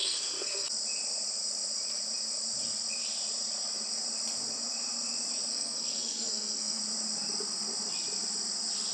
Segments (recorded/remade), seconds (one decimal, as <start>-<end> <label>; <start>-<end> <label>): 0.0-0.7 remade; 0.7-5.5 recorded; 5.5-6.8 remade; 6.8-8.9 recorded